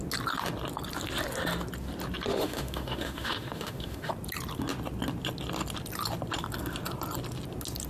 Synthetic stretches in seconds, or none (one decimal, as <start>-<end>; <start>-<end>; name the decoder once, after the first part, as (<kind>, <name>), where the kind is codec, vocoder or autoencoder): 2.3-4.1 (autoencoder, DAC-VAE)